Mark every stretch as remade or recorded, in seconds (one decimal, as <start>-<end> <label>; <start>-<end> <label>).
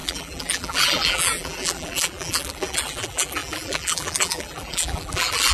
0.0-5.5 remade